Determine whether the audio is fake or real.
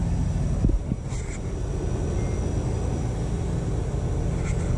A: real